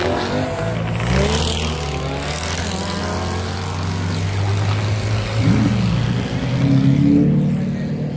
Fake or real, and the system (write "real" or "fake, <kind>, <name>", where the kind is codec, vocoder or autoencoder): real